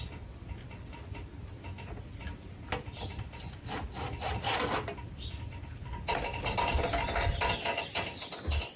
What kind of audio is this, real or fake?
real